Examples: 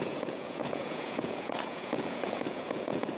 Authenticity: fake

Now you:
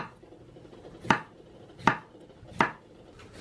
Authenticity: real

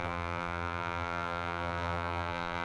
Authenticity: fake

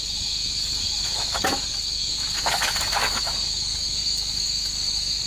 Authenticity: fake